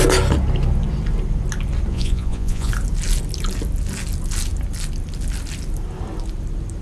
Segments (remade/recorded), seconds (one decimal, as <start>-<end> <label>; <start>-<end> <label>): 0.0-1.9 recorded; 1.9-2.7 remade; 2.7-6.8 recorded

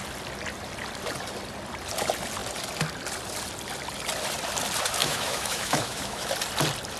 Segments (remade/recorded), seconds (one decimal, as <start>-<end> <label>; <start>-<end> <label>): 0.0-5.0 recorded; 5.0-6.3 remade; 6.3-7.0 recorded

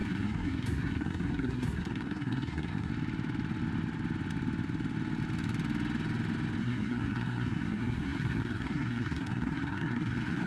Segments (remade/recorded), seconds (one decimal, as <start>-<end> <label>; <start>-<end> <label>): 0.0-2.9 remade; 2.9-6.6 recorded; 6.6-10.5 remade

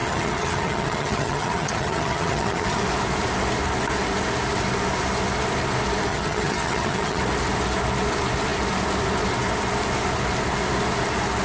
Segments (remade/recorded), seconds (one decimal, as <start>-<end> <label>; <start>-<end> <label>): 0.0-2.8 remade; 2.8-6.1 recorded; 6.1-7.2 remade; 7.2-11.4 recorded